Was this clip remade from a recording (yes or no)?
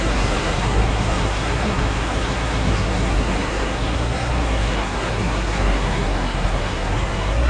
yes